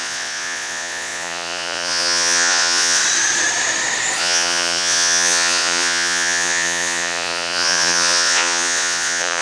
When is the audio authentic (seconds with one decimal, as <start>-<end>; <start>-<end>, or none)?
3.0-4.2